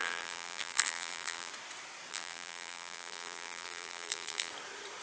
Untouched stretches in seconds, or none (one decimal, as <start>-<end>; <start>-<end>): 1.5-2.1; 4.5-5.0